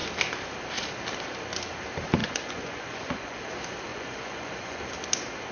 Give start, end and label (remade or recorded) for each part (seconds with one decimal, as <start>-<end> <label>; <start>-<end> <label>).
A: 0.0-2.2 recorded; 2.2-3.4 remade; 3.4-3.9 recorded; 3.9-4.8 remade; 4.8-5.5 recorded